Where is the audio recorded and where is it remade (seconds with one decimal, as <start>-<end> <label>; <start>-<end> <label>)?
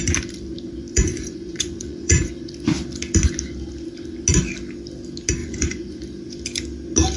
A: 0.0-0.9 recorded; 0.9-2.3 remade; 2.3-5.4 recorded; 5.4-6.0 remade; 6.0-7.2 recorded